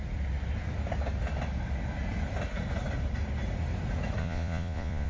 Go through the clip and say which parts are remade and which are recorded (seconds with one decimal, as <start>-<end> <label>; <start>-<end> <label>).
0.0-4.2 recorded; 4.2-5.1 remade